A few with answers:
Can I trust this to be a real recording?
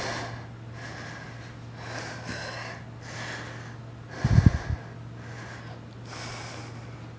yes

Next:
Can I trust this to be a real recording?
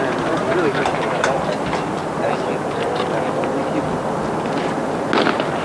yes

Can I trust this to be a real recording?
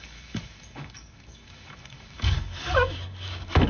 no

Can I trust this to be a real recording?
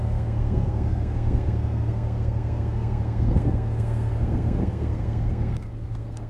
no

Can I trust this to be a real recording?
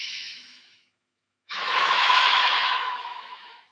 no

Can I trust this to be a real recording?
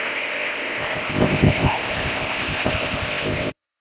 no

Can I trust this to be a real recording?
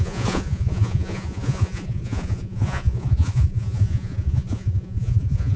no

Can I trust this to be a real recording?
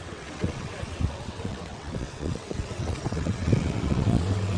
no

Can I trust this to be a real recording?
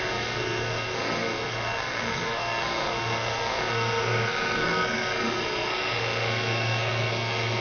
no